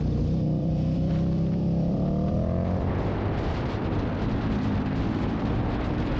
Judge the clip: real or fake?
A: fake